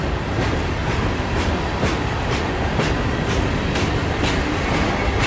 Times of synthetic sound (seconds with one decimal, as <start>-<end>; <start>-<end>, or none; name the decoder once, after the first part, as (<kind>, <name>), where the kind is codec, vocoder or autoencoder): 0.8-1.6 (vocoder, BigVGAN v2)